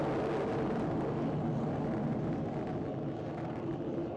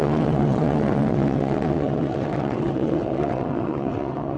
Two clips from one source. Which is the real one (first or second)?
first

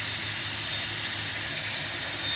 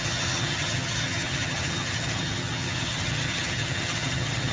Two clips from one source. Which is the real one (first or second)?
first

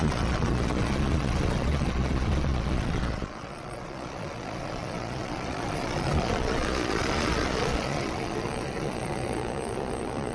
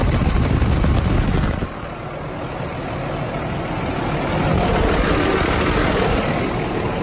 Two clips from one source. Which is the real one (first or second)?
second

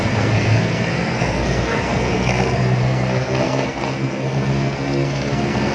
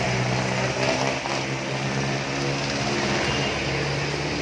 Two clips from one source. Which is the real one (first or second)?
second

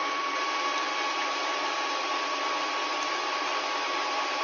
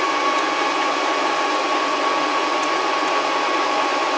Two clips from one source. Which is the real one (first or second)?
first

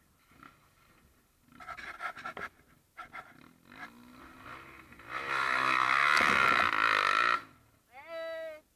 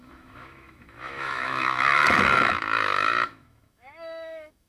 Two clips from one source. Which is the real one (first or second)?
first